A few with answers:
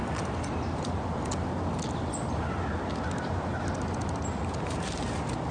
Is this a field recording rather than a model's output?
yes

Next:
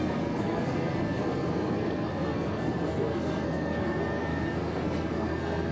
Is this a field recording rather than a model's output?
no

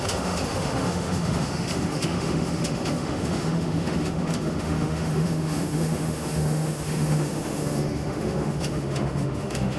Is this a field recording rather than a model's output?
no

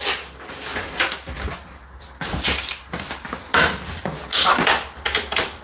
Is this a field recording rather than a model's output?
yes